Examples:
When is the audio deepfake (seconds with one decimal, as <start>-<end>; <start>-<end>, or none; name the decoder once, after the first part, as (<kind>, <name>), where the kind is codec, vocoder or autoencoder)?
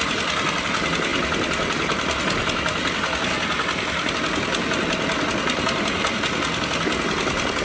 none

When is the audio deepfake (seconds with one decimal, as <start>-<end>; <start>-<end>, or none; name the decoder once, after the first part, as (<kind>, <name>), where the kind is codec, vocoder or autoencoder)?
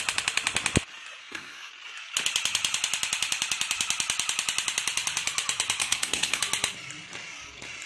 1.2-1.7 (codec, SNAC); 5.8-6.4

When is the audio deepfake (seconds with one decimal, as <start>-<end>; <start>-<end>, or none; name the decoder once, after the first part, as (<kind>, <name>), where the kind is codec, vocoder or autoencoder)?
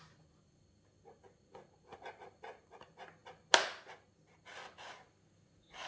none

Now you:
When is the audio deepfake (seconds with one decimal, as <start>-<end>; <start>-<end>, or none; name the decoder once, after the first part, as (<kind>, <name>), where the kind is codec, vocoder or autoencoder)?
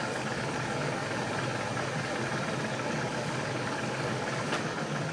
0.0-1.0 (codec, DAC); 2.7-5.1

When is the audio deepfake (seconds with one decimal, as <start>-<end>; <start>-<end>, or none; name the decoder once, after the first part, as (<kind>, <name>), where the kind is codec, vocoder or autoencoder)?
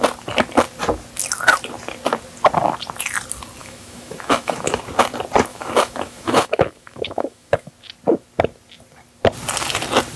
3.6-4.8 (autoencoder, DAC-VAE); 5.5-7.7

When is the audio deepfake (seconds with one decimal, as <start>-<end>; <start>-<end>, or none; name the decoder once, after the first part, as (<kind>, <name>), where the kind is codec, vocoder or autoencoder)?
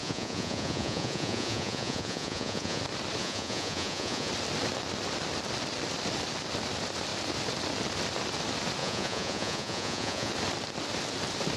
0.0-2.8 (vocoder, Vocos); 3.2-4.3; 8.8-10.3